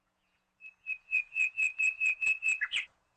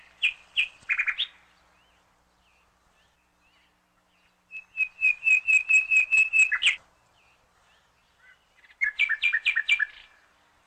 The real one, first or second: second